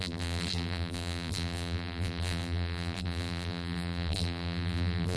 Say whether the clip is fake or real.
fake